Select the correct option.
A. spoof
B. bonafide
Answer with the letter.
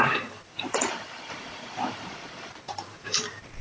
A